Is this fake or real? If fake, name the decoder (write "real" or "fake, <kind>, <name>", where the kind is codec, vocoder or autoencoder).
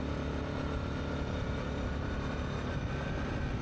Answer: real